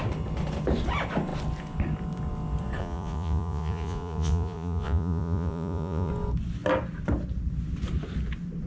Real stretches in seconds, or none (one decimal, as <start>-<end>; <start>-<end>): 0.0-2.8; 6.1-8.7

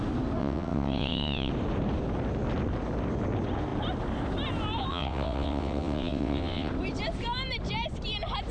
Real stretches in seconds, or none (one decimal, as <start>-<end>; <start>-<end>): 0.0-0.4; 1.5-4.9; 6.7-8.5

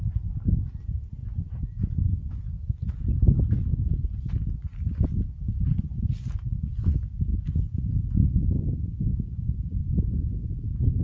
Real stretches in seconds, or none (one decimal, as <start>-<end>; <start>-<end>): 0.0-11.0

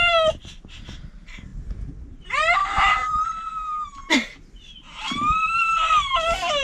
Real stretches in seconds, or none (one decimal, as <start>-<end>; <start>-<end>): 0.0-6.6

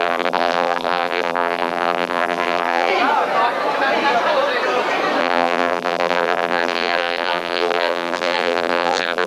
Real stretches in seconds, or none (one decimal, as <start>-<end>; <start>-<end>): 2.9-5.2

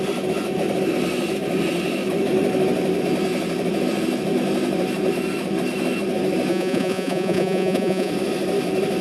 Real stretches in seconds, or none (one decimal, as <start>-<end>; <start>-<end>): 0.0-6.5; 8.1-9.0

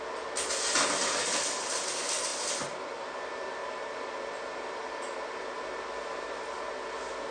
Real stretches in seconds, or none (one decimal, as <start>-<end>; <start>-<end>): 0.0-7.3